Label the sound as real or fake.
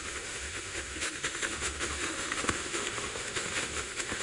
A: fake